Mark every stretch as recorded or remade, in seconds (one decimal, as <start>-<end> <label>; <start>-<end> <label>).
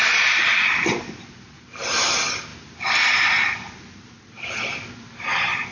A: 0.0-5.7 remade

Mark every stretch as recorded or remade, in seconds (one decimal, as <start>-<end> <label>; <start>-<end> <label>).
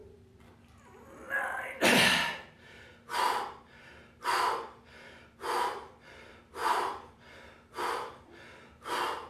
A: 0.0-2.8 remade; 2.8-9.3 recorded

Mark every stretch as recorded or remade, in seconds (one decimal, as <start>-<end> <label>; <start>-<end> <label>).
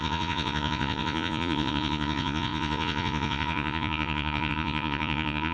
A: 0.0-5.5 remade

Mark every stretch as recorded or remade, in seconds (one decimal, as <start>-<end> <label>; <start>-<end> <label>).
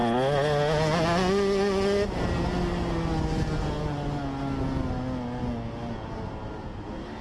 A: 0.0-7.2 recorded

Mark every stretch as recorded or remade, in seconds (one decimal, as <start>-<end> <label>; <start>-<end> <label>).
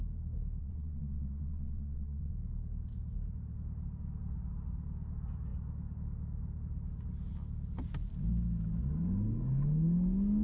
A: 0.0-0.6 recorded; 0.6-2.3 remade; 2.3-10.4 recorded